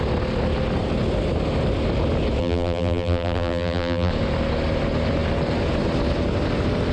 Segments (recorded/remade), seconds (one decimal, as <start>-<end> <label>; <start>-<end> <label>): 0.0-2.4 recorded; 2.4-4.1 remade; 4.1-6.9 recorded